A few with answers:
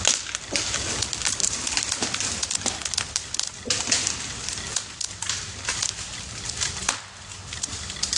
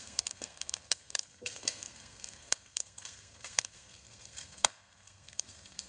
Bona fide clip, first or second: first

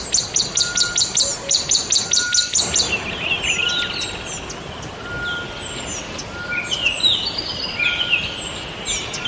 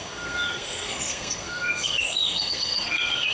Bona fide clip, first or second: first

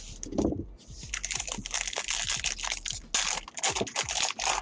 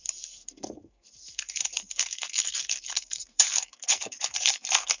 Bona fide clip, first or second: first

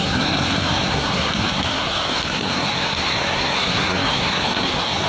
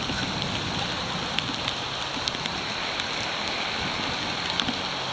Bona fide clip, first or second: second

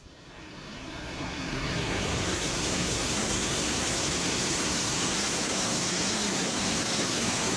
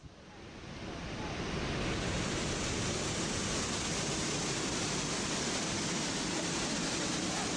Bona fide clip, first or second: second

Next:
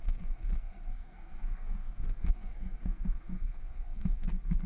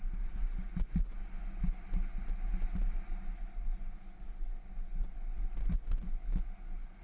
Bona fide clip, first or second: second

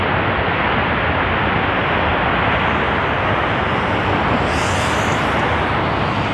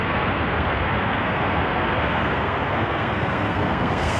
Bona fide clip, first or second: first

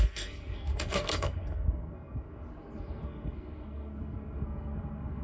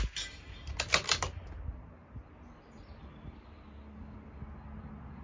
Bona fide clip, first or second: second